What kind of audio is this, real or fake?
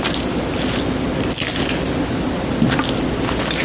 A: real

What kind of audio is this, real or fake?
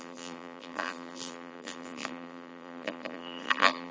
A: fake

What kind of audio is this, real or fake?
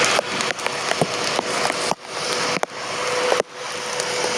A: real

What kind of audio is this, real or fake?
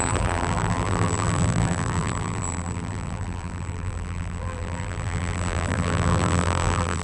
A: fake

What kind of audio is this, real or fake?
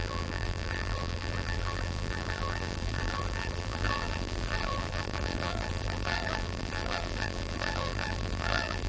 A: fake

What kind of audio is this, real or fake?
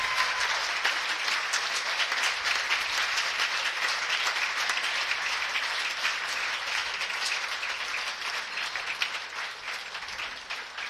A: real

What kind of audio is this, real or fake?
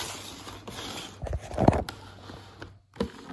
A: real